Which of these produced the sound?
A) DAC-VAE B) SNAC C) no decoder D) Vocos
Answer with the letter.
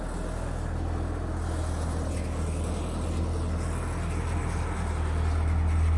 C